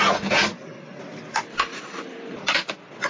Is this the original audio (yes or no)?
yes